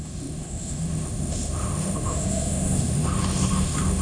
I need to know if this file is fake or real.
fake